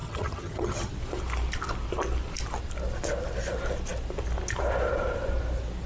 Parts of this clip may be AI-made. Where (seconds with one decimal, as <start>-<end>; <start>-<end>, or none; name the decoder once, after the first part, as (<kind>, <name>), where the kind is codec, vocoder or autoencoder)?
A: 0.0-0.9 (vocoder, HiFi-GAN)

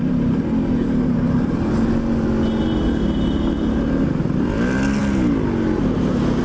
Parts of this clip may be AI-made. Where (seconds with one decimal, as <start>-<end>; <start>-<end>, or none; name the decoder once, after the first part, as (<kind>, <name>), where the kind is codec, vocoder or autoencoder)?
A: none

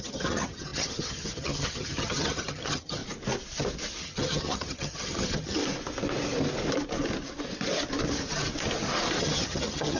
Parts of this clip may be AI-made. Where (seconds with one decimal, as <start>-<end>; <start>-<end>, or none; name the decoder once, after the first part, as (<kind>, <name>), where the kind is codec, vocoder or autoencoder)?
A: 0.0-3.0 (vocoder, HiFi-GAN); 4.0-5.6; 9.2-10.0

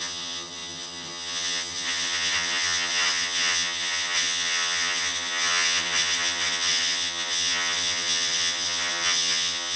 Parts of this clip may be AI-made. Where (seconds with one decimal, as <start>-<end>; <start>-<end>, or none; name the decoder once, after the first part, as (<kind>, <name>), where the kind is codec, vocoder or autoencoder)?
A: 0.0-9.8 (vocoder, HiFi-GAN)

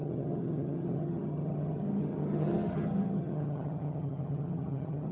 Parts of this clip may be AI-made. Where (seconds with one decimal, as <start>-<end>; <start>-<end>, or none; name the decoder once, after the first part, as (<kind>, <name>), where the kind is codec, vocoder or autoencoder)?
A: 0.0-5.1 (vocoder, HiFi-GAN)

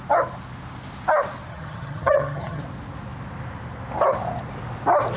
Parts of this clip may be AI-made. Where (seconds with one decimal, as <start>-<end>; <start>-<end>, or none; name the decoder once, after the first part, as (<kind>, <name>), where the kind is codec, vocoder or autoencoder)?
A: 1.5-2.6 (vocoder, HiFi-GAN)

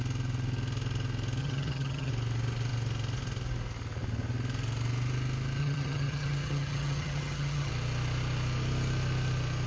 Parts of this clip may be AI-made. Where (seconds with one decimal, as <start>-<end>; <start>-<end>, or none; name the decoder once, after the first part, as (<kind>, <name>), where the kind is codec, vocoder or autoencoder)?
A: 1.4-2.1 (vocoder, HiFi-GAN); 5.6-7.7